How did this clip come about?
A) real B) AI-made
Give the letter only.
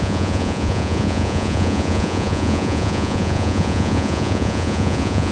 B